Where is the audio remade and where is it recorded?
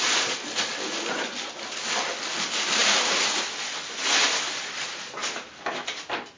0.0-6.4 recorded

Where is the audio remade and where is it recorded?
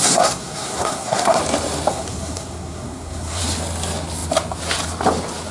0.0-1.4 remade; 1.4-1.9 recorded; 1.9-3.4 remade; 3.4-5.5 recorded